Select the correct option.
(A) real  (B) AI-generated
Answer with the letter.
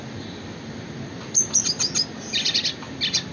A